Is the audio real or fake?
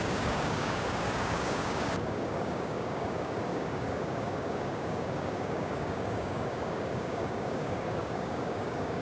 fake